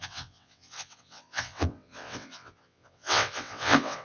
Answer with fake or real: fake